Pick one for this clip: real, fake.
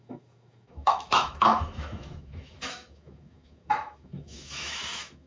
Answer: fake